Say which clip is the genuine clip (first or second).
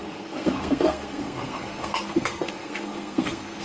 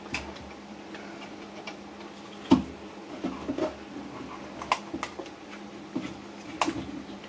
second